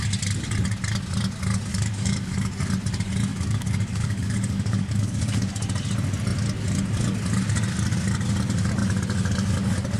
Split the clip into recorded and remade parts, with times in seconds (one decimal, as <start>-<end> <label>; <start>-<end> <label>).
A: 0.0-1.7 recorded; 1.7-2.5 remade; 2.5-3.3 recorded; 3.3-5.5 remade; 5.5-10.0 recorded